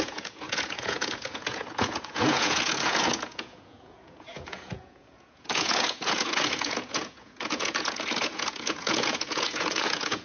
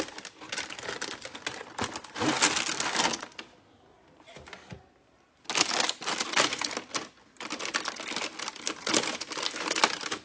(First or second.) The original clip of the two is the second